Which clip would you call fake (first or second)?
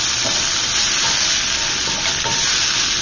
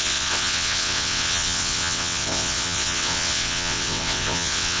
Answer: second